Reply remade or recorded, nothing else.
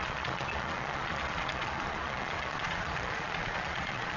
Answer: remade